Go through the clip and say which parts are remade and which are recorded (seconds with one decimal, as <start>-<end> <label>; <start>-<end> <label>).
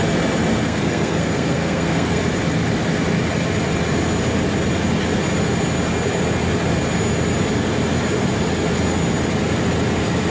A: 0.0-0.6 recorded; 0.6-2.2 remade; 2.2-10.3 recorded